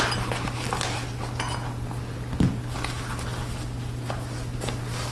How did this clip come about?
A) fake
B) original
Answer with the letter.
B